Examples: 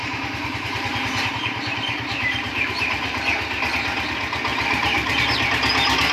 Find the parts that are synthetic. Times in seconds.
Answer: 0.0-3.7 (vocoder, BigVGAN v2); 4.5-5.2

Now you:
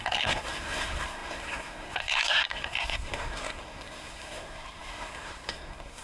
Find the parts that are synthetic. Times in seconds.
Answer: 0.0-6.0 (codec, SNAC)